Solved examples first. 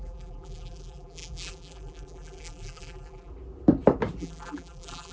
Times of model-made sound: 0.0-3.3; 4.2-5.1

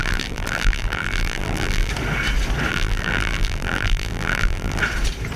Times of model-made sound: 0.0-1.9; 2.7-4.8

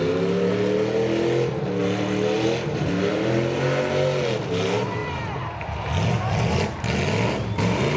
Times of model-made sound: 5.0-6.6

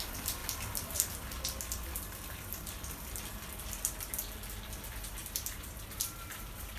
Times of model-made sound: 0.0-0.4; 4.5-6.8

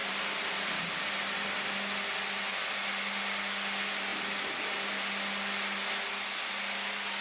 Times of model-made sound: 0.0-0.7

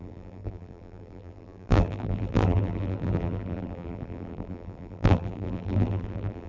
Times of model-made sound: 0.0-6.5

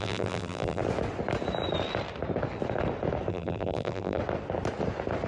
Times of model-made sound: 0.0-0.8; 3.3-4.2